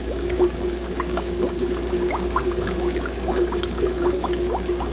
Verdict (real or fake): fake